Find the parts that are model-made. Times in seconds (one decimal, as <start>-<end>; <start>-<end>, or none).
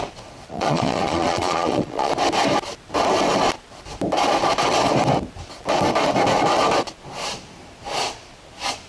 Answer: 0.5-2.1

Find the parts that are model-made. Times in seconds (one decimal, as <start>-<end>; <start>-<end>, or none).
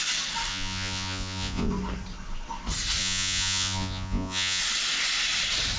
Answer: 0.5-1.7; 3.0-4.6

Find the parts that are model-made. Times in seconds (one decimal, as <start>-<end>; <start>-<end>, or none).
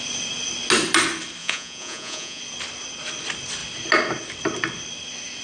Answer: 1.4-2.4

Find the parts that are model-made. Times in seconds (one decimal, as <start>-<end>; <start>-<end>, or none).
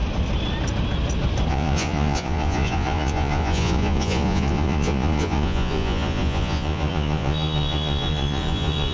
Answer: 1.5-8.9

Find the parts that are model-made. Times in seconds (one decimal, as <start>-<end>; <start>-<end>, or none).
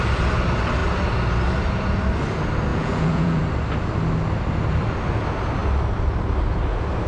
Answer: 2.7-3.4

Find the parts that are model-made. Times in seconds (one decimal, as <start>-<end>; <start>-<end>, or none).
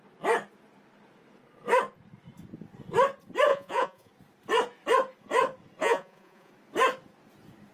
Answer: 3.5-4.1; 5.8-6.5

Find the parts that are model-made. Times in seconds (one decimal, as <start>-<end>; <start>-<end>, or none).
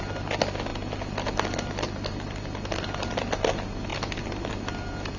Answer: none